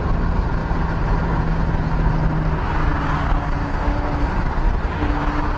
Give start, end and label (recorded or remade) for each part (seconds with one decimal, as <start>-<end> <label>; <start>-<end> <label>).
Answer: 0.0-5.6 recorded

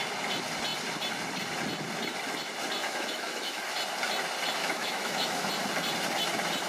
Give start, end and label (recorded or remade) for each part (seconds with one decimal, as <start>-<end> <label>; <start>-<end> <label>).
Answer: 0.0-2.8 recorded; 2.8-3.6 remade; 3.6-4.6 recorded; 4.6-5.5 remade; 5.5-6.7 recorded